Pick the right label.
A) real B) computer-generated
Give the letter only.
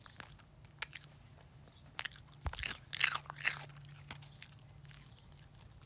A